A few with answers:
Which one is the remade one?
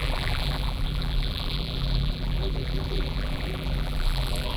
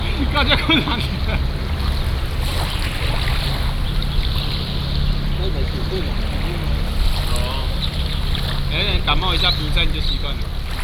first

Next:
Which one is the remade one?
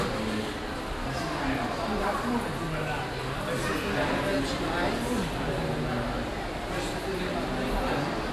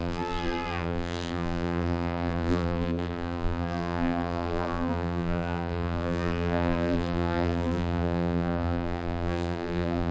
second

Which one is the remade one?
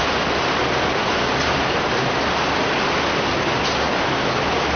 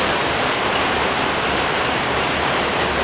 second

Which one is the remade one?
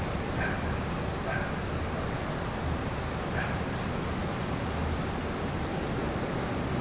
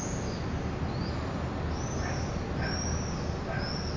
first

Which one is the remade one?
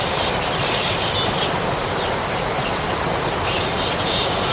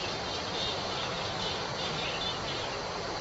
first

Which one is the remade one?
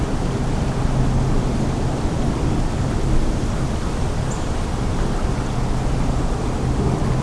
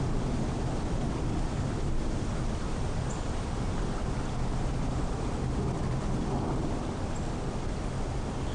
second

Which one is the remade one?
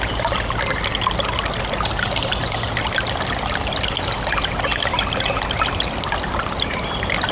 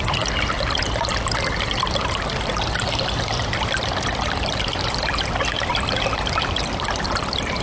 second